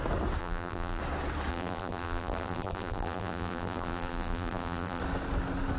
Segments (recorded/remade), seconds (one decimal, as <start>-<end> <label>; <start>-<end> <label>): 0.0-0.4 recorded; 0.4-1.0 remade; 1.0-1.5 recorded; 1.5-5.0 remade; 5.0-5.8 recorded